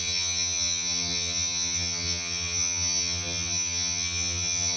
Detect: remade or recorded remade